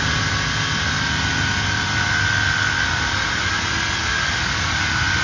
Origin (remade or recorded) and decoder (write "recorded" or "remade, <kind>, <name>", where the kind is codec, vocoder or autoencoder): recorded